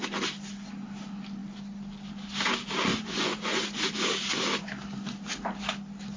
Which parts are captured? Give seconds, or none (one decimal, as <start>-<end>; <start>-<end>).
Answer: 0.0-2.9; 4.0-6.2